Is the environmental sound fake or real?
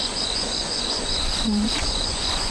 fake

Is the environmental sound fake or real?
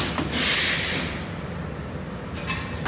real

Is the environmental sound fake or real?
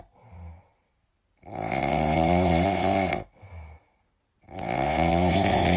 real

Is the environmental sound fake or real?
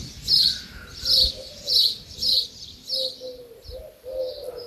fake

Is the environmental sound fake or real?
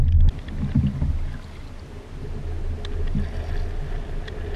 real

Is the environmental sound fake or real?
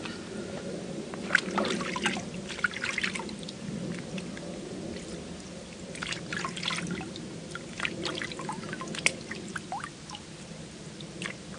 real